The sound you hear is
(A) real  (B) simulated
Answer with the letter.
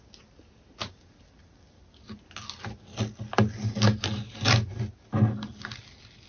A